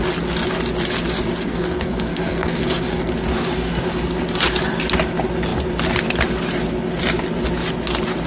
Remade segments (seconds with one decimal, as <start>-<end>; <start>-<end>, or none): 1.4-3.1

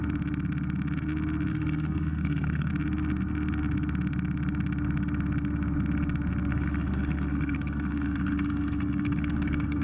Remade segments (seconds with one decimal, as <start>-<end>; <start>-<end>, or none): 1.5-2.7; 6.5-9.8

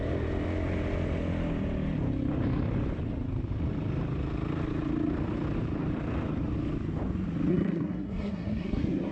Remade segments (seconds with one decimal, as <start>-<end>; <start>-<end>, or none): 7.5-9.1

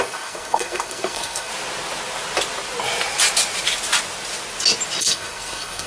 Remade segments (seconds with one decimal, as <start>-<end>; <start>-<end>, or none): 0.0-1.5; 5.0-5.9